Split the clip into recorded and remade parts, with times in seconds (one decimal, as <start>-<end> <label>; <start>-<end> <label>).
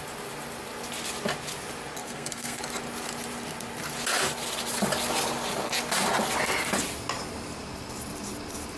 0.0-2.0 recorded; 2.0-2.6 remade; 2.6-8.8 recorded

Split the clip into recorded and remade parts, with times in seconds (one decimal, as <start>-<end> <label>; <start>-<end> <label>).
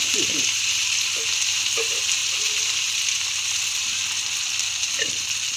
0.0-1.5 recorded; 1.5-2.2 remade; 2.2-4.8 recorded; 4.8-5.6 remade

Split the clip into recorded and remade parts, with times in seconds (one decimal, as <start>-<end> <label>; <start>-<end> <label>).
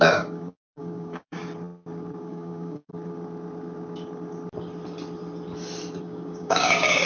0.0-1.4 remade; 1.4-2.2 recorded; 2.2-2.9 remade; 2.9-6.0 recorded; 6.0-7.1 remade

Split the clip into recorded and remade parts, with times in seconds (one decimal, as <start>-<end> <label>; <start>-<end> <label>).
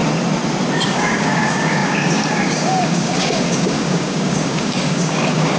0.0-0.8 recorded; 0.8-5.6 remade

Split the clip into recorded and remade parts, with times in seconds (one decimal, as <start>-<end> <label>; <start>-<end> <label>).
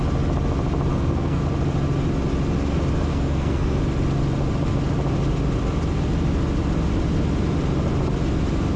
0.0-0.9 recorded; 0.9-1.4 remade; 1.4-3.1 recorded; 3.1-3.8 remade; 3.8-8.8 recorded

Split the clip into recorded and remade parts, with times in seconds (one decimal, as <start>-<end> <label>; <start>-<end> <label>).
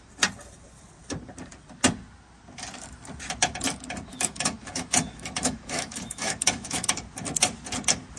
0.0-4.1 recorded; 4.1-6.9 remade; 6.9-8.2 recorded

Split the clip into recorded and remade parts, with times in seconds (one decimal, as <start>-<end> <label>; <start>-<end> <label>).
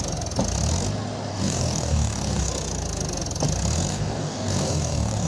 0.0-1.3 recorded; 1.3-2.5 remade; 2.5-3.9 recorded; 3.9-5.3 remade